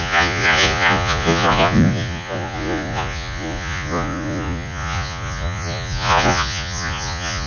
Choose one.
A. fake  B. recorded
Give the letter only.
A